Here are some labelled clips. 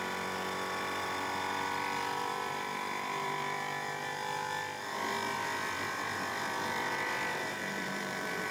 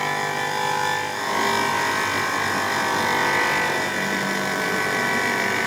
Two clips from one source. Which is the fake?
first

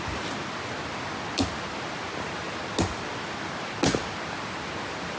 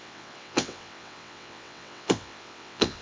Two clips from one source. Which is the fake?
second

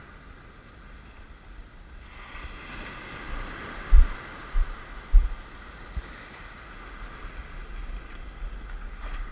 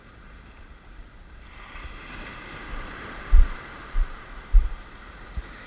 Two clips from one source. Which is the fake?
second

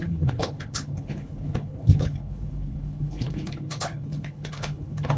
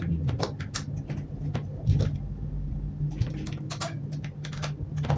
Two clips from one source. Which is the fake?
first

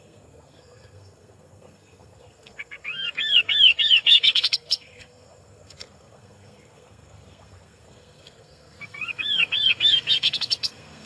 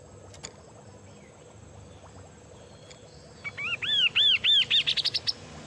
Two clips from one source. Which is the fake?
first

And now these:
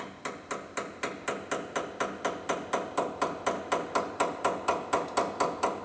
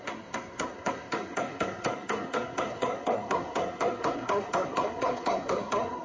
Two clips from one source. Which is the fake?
second